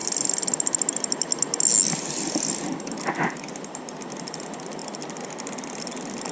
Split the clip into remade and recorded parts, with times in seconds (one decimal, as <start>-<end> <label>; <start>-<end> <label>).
0.0-4.8 recorded; 4.8-5.8 remade; 5.8-6.3 recorded